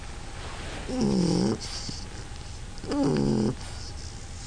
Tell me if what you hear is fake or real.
real